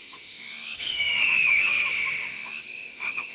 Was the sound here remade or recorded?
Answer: remade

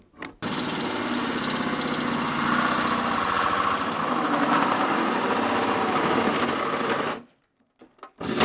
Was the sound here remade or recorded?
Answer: recorded